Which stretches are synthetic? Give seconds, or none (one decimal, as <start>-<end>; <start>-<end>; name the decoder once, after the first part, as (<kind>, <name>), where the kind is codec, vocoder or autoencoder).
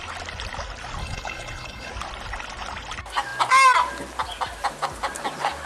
1.0-1.9 (codec, HILCodec)